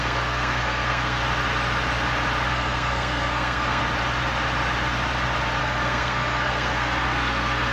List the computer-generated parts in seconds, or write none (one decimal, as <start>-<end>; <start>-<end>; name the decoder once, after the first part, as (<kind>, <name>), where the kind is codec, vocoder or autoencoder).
0.0-1.2 (codec, SNAC); 2.5-3.8; 5.6-7.7